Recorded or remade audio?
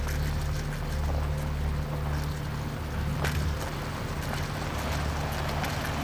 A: recorded